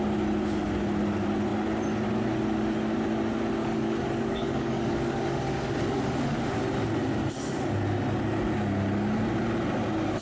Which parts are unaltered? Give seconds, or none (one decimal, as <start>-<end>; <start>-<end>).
0.0-3.6; 6.4-10.2

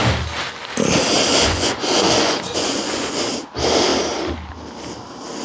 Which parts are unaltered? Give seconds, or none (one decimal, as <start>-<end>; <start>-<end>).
0.0-1.3; 3.3-5.4

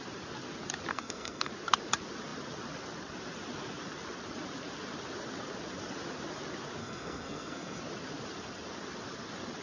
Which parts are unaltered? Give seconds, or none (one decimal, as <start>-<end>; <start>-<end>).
0.0-0.9; 1.5-6.8; 7.8-9.6

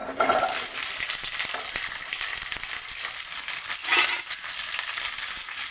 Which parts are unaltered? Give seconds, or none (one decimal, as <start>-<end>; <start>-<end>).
3.4-5.7

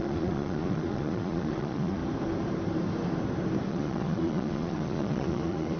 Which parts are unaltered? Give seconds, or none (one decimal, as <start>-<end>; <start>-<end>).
2.0-3.7

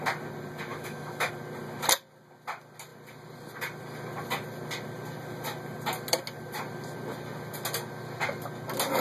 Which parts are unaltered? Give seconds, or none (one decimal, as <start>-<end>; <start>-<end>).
0.0-0.7; 1.3-9.0

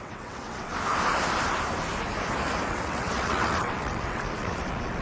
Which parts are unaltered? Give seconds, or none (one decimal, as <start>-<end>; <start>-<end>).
0.7-2.7

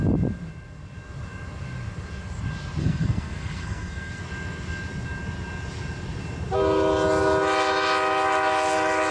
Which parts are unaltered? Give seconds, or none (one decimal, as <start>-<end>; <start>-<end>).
0.0-2.8; 4.2-9.1